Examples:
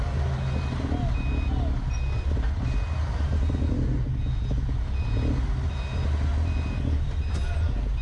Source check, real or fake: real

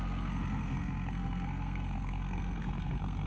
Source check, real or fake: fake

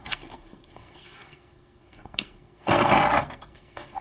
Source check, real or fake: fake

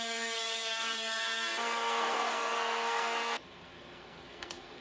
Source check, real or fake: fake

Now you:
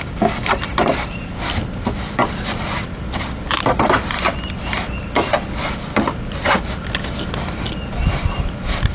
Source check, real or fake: real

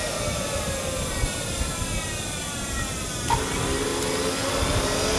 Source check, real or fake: real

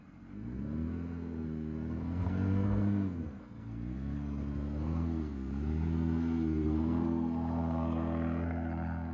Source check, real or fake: fake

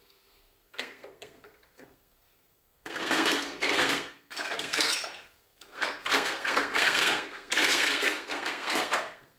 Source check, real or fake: fake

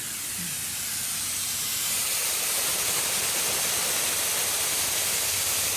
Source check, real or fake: real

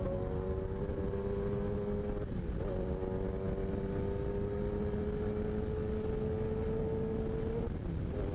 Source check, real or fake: real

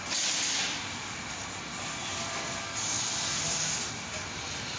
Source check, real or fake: real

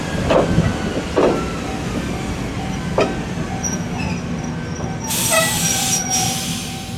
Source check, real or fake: real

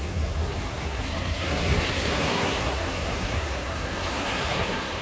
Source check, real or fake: fake